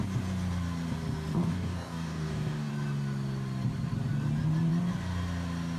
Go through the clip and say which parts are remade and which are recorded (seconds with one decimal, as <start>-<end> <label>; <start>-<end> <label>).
0.0-1.5 recorded; 1.5-2.7 remade; 2.7-5.8 recorded